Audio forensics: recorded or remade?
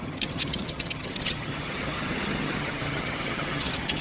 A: remade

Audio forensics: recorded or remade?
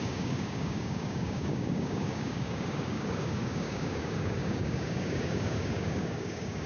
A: remade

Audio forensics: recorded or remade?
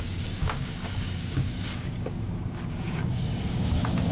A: remade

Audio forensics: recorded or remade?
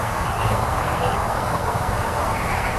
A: remade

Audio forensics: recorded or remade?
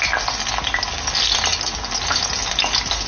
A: recorded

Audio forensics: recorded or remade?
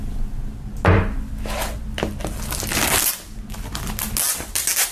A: recorded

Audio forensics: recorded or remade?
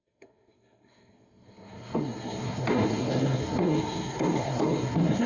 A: remade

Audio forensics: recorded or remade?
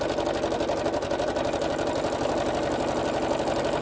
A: recorded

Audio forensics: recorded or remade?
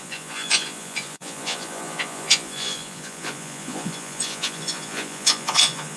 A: remade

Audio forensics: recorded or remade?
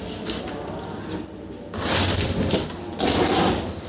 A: remade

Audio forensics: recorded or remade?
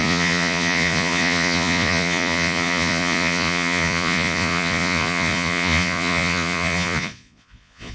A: remade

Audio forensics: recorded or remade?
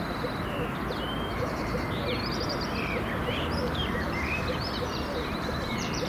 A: remade